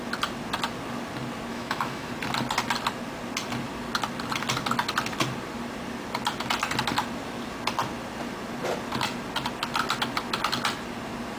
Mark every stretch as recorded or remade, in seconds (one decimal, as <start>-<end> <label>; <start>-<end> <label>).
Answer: 0.0-1.5 recorded; 1.5-2.1 remade; 2.1-11.4 recorded